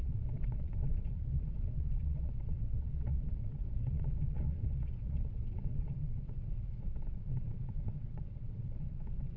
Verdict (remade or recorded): remade